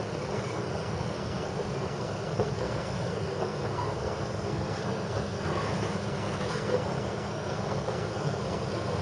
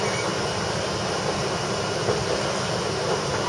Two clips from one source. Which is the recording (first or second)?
second